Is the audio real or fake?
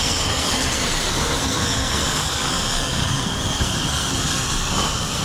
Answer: fake